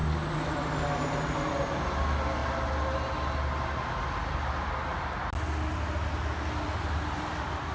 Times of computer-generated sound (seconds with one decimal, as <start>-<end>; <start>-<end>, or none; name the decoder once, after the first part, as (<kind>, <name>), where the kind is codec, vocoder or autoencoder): none